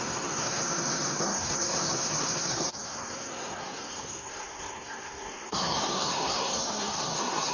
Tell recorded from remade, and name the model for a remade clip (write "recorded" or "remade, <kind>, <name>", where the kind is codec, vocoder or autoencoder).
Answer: remade, codec, SNAC